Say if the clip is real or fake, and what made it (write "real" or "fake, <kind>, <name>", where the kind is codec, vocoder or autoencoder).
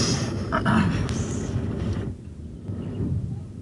real